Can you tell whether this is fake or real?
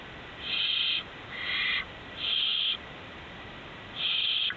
real